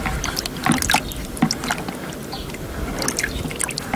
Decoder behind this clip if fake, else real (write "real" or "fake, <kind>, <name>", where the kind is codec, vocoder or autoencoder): real